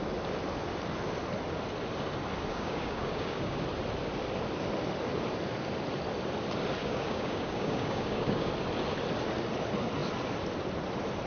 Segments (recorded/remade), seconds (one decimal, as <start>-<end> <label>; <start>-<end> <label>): 0.0-2.5 recorded; 2.5-3.6 remade; 3.6-6.8 recorded; 6.8-8.5 remade; 8.5-11.3 recorded